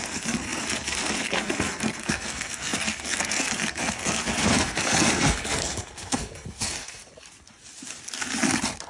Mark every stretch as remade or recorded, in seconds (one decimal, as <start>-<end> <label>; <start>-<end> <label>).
0.0-7.0 remade; 7.0-8.9 recorded